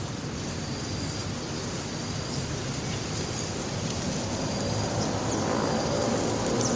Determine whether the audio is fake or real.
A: real